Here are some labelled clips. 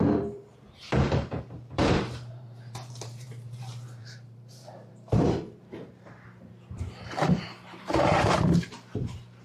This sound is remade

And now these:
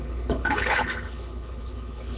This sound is remade